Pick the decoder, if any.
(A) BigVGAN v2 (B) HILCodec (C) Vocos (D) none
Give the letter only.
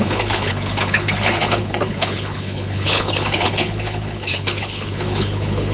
B